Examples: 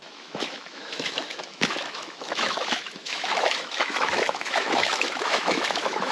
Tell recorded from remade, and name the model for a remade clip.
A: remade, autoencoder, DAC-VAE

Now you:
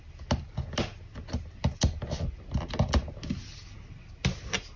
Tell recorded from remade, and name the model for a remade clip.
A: recorded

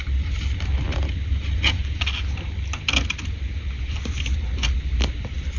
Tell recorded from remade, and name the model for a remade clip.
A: recorded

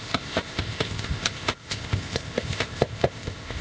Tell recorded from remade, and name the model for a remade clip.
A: remade, codec, ZipCodec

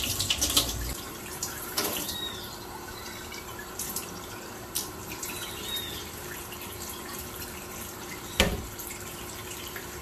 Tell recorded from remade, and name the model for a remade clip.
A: remade, vocoder, BigVGAN v2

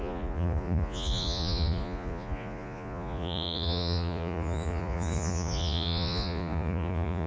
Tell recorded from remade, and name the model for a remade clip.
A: remade, vocoder, Vocos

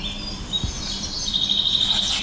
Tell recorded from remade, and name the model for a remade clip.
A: recorded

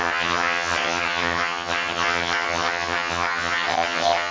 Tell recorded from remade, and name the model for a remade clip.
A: remade, vocoder, HiFi-GAN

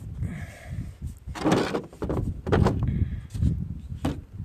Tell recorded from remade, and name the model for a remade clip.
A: recorded